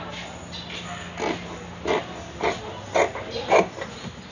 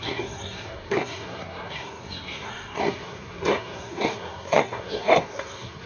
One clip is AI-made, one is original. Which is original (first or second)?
first